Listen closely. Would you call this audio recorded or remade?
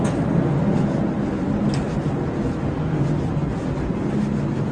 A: recorded